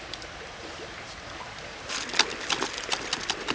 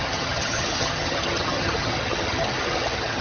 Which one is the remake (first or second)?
second